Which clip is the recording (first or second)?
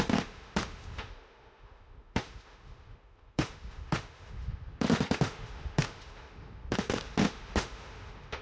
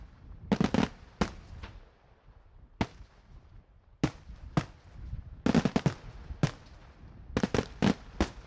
second